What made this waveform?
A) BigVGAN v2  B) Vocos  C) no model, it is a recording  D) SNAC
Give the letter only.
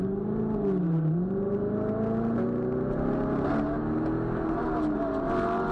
C